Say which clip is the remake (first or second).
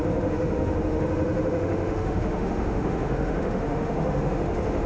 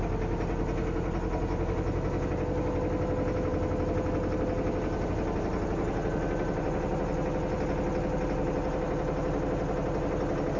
first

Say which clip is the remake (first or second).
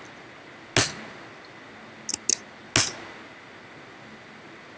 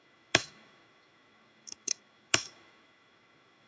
second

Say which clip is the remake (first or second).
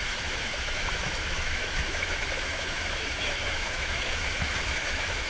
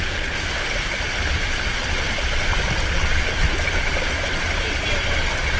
first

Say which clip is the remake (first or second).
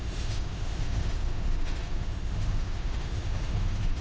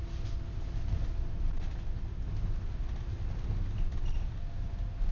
first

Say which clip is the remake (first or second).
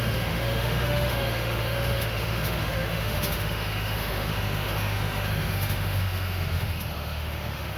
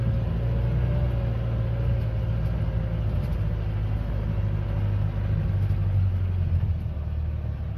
first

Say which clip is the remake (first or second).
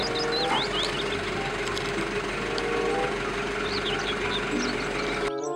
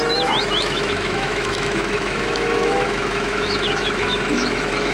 second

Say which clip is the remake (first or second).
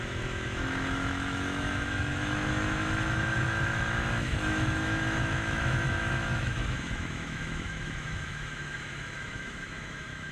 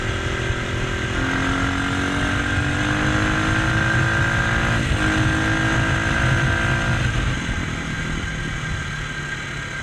first